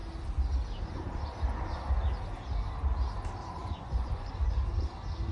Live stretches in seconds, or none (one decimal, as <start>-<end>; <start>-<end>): 0.0-3.6; 4.3-5.3